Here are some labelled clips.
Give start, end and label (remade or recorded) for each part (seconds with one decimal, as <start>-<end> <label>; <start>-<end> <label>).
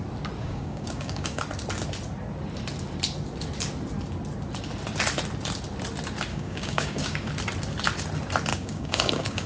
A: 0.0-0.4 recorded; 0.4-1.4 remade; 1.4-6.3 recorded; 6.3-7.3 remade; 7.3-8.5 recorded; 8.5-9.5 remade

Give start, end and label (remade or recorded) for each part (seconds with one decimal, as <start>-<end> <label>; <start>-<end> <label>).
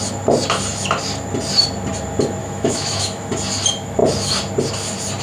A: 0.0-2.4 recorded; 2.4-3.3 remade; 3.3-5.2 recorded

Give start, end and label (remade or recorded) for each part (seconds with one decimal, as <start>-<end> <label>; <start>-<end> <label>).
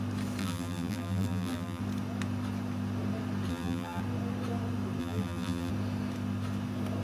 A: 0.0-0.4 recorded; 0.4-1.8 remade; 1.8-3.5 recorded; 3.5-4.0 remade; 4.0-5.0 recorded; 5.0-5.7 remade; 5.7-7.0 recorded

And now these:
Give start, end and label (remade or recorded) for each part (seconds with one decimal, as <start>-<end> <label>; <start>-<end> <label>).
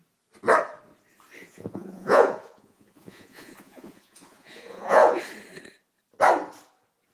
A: 0.0-1.4 recorded; 1.4-5.2 remade; 5.2-7.1 recorded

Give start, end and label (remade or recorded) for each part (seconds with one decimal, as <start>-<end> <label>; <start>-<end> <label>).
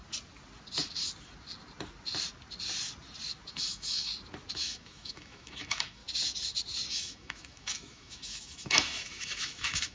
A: 0.0-3.5 recorded; 3.5-4.1 remade; 4.1-4.6 recorded; 4.6-6.0 remade; 6.0-6.9 recorded; 6.9-9.9 remade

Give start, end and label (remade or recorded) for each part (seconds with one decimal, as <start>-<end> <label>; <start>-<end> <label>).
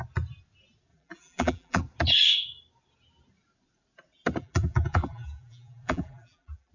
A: 0.0-0.9 recorded; 0.9-1.8 remade; 1.8-4.4 recorded; 4.4-6.7 remade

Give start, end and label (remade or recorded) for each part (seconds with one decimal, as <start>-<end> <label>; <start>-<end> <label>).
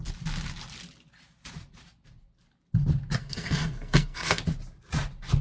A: 0.0-3.2 recorded; 3.2-4.4 remade; 4.4-5.4 recorded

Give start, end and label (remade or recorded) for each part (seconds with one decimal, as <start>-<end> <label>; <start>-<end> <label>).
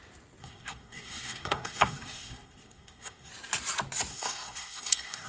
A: 0.0-0.4 recorded; 0.4-3.3 remade; 3.3-4.1 recorded; 4.1-5.3 remade